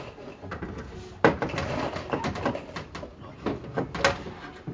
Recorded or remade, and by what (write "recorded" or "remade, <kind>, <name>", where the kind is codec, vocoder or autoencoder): recorded